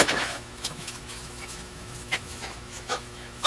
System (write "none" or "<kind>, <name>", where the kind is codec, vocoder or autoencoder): autoencoder, DAC-VAE